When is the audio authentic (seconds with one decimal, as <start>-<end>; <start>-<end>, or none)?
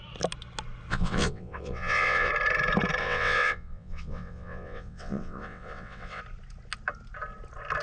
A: 0.0-0.9; 2.3-3.0; 6.2-7.8